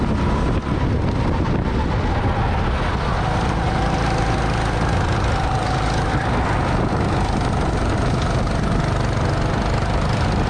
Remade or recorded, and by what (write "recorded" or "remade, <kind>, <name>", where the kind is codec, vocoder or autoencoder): recorded